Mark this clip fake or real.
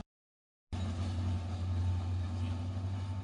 real